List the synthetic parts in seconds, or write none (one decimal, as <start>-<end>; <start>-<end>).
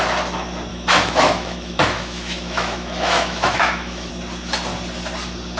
0.7-4.1